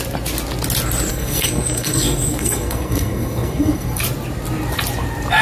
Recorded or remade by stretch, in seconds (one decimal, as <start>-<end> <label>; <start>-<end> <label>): 0.0-1.1 recorded; 1.1-4.0 remade; 4.0-5.4 recorded